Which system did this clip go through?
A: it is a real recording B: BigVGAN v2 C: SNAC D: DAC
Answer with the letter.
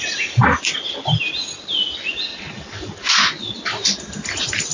A